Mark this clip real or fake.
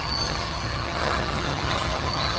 fake